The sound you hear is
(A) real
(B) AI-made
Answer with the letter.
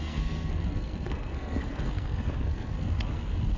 B